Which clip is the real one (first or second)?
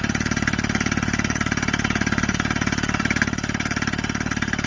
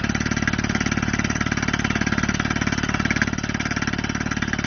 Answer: second